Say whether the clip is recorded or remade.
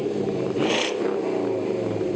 recorded